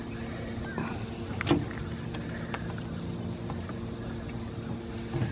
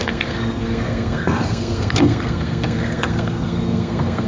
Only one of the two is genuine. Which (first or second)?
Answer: first